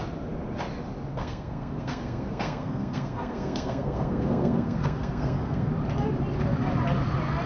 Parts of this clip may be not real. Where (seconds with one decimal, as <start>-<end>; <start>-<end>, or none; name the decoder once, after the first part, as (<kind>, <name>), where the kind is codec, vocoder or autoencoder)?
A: 1.2-5.7 (codec, SNAC)